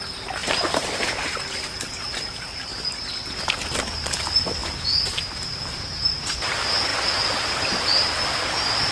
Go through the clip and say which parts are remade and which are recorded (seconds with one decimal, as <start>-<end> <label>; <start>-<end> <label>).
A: 0.0-8.9 recorded